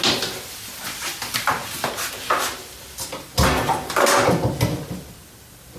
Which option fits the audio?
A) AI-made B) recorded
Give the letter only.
B